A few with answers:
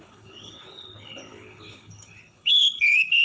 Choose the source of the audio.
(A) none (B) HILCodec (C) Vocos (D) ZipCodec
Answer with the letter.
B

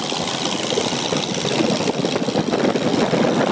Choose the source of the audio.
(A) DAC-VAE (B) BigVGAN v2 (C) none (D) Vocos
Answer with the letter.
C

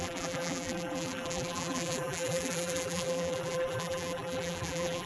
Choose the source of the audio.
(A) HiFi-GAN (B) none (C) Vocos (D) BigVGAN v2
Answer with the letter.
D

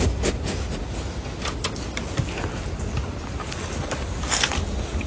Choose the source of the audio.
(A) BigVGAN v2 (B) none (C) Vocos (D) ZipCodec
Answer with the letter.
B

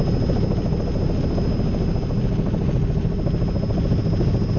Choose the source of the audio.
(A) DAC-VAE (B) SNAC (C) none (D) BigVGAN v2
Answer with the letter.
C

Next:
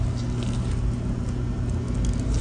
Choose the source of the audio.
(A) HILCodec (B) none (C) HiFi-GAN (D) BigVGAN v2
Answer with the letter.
B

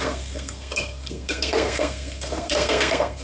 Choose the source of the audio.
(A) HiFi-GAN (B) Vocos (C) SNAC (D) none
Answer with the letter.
C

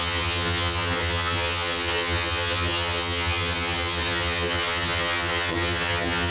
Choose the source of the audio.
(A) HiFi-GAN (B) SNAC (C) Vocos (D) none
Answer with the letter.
A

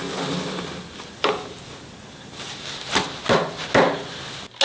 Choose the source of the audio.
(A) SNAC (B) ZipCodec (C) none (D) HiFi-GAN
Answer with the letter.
C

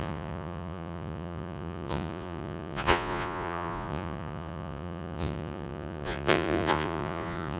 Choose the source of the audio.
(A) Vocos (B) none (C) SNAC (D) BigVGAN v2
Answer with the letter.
A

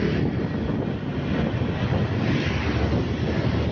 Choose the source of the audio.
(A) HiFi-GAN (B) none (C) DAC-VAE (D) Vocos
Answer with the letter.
B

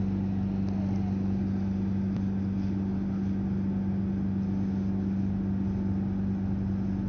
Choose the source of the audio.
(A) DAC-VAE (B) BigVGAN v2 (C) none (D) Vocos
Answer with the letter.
C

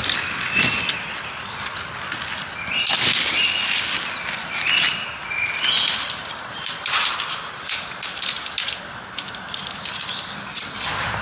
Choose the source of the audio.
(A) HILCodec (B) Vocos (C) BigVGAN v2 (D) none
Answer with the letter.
D